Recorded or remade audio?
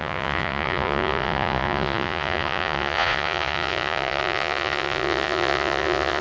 remade